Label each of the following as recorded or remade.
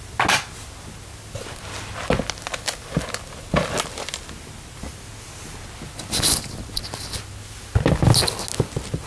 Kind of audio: recorded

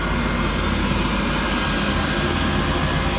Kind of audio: recorded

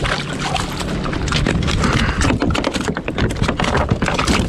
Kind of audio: recorded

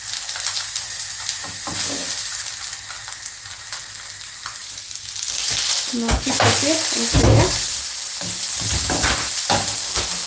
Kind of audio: recorded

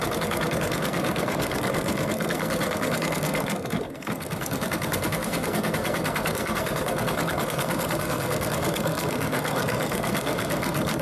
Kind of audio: remade